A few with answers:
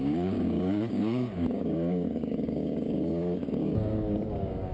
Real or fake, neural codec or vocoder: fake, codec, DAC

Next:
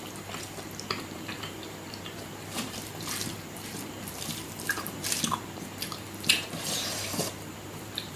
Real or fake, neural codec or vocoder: fake, vocoder, BigVGAN v2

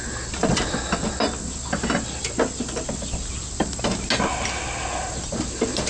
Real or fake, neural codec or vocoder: real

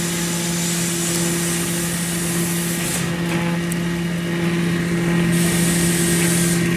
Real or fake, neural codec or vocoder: real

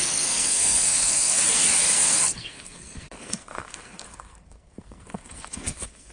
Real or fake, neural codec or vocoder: fake, codec, SNAC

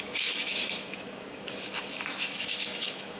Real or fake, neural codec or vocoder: fake, autoencoder, DAC-VAE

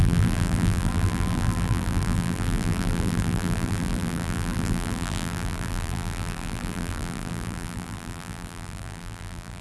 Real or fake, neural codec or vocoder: fake, vocoder, BigVGAN v2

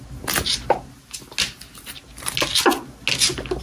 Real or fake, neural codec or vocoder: real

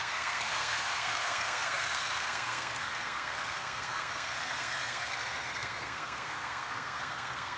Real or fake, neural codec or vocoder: fake, codec, SNAC